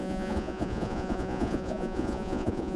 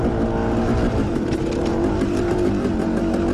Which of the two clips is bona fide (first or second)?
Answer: second